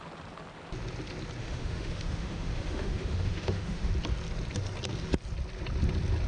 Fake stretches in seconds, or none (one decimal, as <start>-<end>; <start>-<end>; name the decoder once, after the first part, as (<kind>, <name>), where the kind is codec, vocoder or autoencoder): 1.4-3.9 (autoencoder, DAC-VAE)